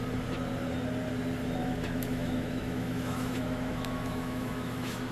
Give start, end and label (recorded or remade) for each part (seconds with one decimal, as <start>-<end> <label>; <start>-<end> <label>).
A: 0.0-1.6 recorded; 1.6-5.1 remade